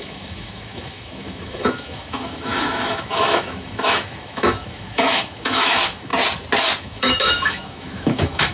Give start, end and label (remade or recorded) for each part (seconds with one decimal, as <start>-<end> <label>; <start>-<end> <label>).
0.0-6.1 remade; 6.1-6.8 recorded; 6.8-8.5 remade